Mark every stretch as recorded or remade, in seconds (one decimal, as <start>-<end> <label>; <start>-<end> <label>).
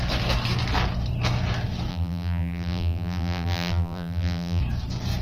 0.0-1.9 recorded; 1.9-4.6 remade; 4.6-5.2 recorded